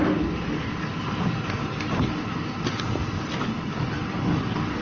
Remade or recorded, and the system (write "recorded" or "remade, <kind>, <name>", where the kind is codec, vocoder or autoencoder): recorded